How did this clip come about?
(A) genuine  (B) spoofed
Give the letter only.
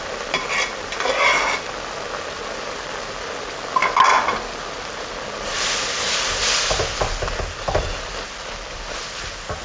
A